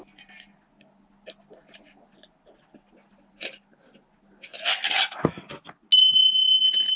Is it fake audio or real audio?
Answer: real